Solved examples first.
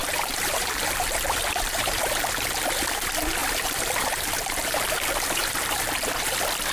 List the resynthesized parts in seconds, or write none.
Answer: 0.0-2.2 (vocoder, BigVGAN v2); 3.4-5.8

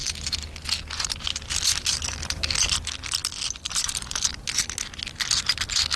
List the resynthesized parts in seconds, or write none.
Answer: 3.2-4.3 (vocoder, BigVGAN v2)

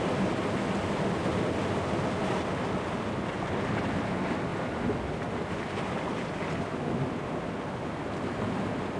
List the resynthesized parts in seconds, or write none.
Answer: none

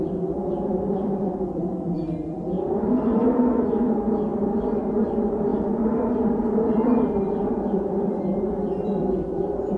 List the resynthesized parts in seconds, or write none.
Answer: 0.0-3.2 (vocoder, BigVGAN v2); 4.8-5.5; 6.1-9.8

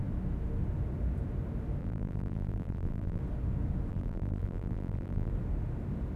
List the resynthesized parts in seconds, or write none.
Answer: 1.8-3.2 (vocoder, BigVGAN v2); 3.9-5.3

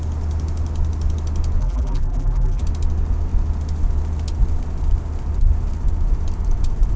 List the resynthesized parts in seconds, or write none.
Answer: 1.6-2.6 (vocoder, BigVGAN v2)

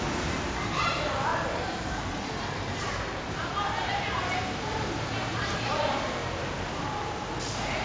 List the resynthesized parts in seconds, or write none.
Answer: 0.0-6.2 (vocoder, BigVGAN v2); 6.8-7.8